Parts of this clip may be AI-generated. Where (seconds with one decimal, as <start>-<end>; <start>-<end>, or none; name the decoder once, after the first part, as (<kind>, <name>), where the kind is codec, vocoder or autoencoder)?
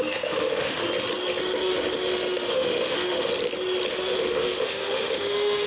0.0-0.8 (autoencoder, DAC-VAE); 1.4-3.3; 3.9-5.7